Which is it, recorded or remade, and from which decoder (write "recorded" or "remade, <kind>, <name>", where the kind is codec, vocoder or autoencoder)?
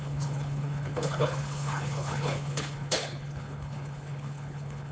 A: remade, codec, HILCodec